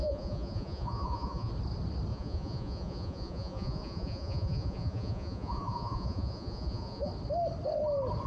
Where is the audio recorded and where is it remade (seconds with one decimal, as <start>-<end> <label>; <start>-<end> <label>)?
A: 0.0-1.5 remade; 1.5-2.1 recorded; 2.1-7.1 remade; 7.1-8.3 recorded